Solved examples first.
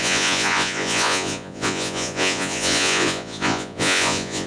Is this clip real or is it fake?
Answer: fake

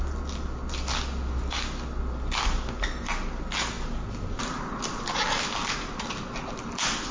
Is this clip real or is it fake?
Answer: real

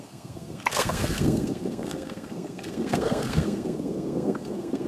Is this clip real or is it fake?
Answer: fake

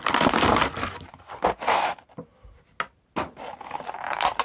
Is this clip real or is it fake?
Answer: real